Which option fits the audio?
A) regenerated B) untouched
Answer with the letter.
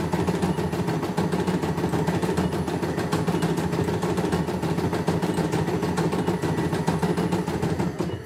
B